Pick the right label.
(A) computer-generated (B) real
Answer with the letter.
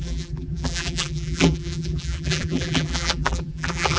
A